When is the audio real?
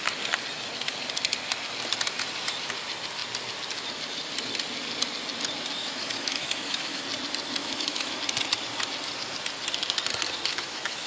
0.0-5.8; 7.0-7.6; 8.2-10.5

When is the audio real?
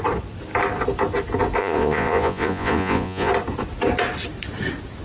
0.0-1.6; 3.3-5.0